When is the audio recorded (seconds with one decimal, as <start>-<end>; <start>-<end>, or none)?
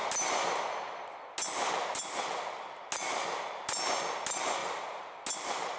0.0-4.6; 5.2-5.8